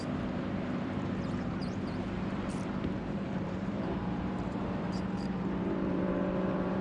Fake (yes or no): yes